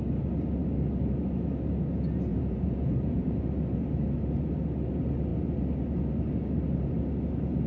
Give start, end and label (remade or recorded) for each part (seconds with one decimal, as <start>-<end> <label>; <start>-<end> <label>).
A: 0.0-2.3 recorded; 2.3-3.4 remade; 3.4-7.7 recorded